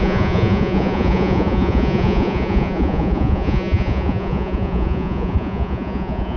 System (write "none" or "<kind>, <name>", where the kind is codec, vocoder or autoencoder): vocoder, Vocos